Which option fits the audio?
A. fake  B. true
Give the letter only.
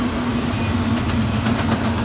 B